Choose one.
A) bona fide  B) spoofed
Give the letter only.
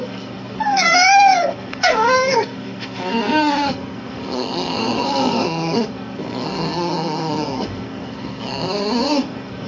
B